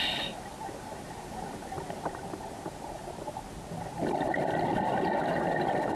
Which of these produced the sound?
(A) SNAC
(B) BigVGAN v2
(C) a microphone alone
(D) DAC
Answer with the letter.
C